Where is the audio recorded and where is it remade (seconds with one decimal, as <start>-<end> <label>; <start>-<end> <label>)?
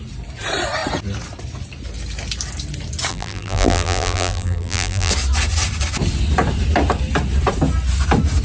0.0-3.1 recorded; 3.1-5.1 remade; 5.1-8.4 recorded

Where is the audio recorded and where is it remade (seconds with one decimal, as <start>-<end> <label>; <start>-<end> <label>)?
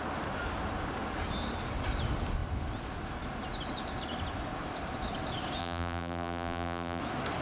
0.0-5.6 recorded; 5.6-7.0 remade; 7.0-7.4 recorded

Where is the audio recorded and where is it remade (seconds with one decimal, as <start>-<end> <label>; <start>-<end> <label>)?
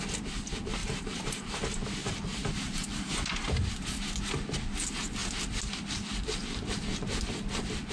0.0-0.8 recorded; 0.8-1.6 remade; 1.6-2.0 recorded; 2.0-3.2 remade; 3.2-7.9 recorded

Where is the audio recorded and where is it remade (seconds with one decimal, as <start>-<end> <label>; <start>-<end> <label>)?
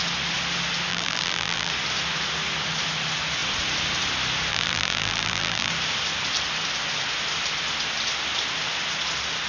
0.0-0.9 recorded; 0.9-1.7 remade; 1.7-4.5 recorded; 4.5-5.7 remade; 5.7-9.5 recorded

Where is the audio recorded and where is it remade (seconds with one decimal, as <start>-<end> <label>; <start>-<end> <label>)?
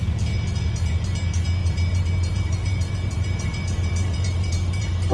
0.0-1.6 recorded; 1.6-5.1 remade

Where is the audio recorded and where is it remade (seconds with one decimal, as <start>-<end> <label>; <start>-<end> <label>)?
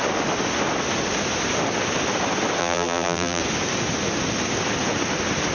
0.0-2.6 recorded; 2.6-3.4 remade; 3.4-5.5 recorded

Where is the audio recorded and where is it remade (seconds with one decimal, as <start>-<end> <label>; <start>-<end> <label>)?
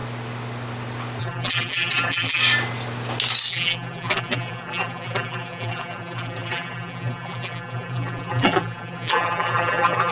0.0-1.2 recorded; 1.2-2.4 remade; 2.4-3.5 recorded; 3.5-10.1 remade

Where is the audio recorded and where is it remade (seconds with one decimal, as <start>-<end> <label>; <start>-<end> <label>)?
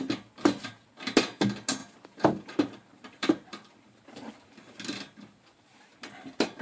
0.0-1.8 recorded; 1.8-4.3 remade; 4.3-6.6 recorded